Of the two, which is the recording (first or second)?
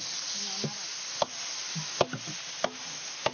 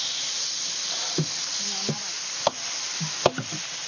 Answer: first